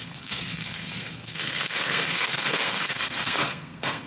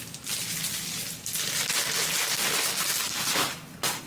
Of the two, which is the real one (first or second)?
second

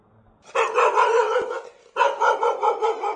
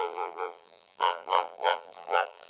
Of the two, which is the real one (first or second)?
first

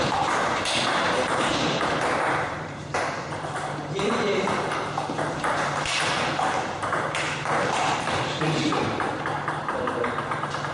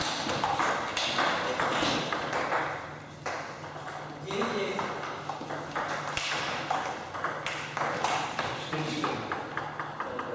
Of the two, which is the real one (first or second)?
second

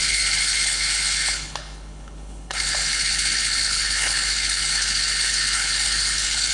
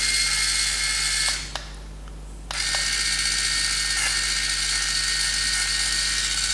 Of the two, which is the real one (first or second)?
second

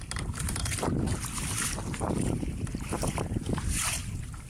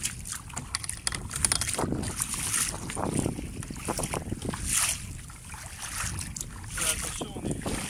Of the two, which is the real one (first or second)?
second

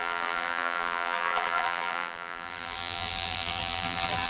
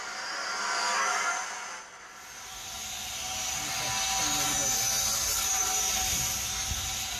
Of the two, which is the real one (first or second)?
second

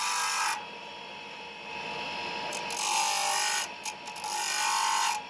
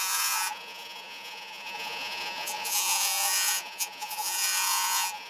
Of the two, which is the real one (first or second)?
first